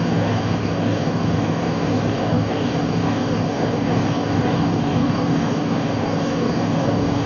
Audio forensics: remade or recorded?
remade